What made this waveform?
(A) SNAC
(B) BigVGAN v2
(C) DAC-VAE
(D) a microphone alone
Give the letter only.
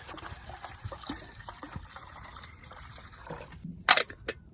B